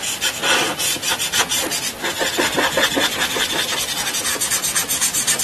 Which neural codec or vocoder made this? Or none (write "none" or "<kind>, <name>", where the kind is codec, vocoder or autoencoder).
none